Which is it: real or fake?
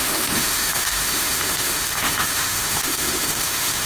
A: fake